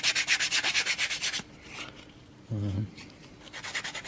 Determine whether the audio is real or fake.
real